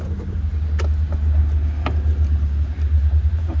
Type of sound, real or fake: real